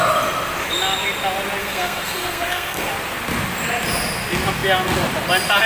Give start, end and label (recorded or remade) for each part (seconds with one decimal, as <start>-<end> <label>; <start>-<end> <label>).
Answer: 0.0-1.6 recorded; 1.6-2.9 remade; 2.9-5.7 recorded